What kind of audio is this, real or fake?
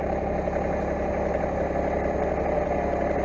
real